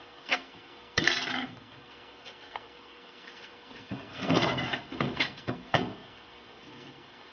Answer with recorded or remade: remade